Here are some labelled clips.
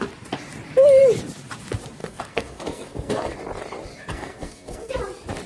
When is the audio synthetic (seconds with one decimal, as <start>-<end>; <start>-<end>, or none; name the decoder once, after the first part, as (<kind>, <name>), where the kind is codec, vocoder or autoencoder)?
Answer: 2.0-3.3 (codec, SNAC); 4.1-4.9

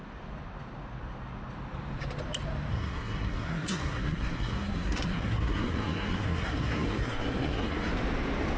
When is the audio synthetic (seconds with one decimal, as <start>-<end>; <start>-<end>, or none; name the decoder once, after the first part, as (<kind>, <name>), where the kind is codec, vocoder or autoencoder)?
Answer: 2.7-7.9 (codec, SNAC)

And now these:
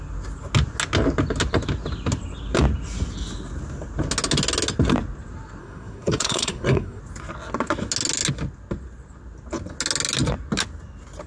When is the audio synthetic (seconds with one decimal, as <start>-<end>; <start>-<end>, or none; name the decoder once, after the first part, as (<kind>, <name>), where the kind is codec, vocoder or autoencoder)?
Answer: 5.6-7.0 (codec, SNAC)

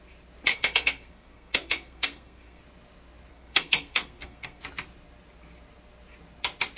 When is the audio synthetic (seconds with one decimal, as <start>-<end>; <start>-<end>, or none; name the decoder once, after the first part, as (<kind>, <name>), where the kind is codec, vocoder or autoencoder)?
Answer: 0.5-2.6 (codec, SNAC); 3.3-4.6